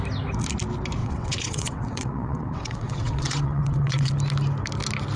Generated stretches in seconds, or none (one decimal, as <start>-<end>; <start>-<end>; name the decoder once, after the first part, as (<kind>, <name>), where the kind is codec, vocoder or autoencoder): 1.0-4.1 (vocoder, WaveNeXt)

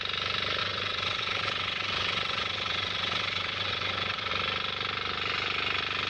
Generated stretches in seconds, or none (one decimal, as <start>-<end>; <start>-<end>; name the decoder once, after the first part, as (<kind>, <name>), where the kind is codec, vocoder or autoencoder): 0.6-4.3 (vocoder, WaveNeXt)

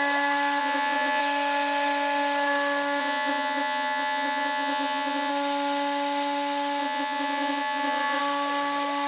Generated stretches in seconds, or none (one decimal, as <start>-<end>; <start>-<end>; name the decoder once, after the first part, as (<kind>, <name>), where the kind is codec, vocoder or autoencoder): 0.6-1.2 (vocoder, WaveNeXt); 3.0-5.3; 6.8-8.2

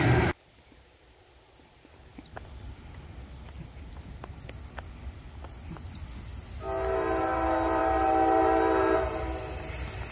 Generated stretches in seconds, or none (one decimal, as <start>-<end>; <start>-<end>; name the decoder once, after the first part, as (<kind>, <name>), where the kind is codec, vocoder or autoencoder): none

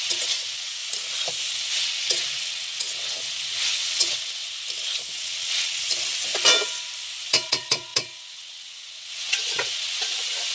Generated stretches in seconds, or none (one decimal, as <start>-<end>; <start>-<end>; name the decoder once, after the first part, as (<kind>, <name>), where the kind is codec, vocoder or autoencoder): 0.0-0.8 (vocoder, WaveNeXt); 1.5-4.4; 5.0-5.9; 7.2-10.5

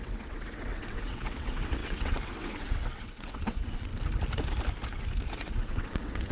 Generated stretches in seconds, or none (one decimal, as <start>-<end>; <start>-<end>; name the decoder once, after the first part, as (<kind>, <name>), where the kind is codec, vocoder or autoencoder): 0.0-3.9 (vocoder, WaveNeXt); 5.3-6.3

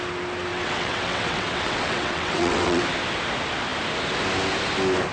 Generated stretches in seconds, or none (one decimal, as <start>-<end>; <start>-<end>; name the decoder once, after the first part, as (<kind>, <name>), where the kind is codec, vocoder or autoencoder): 0.5-2.8 (vocoder, WaveNeXt)

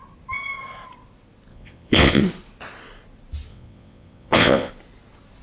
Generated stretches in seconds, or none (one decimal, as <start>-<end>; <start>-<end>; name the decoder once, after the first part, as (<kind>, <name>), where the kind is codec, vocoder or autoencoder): 1.5-2.2 (vocoder, WaveNeXt); 3.5-4.7